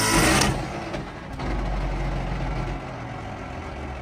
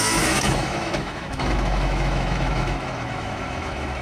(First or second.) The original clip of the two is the first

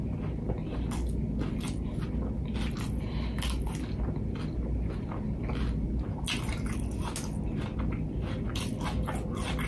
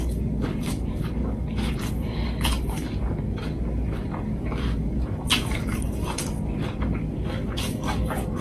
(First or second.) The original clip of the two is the first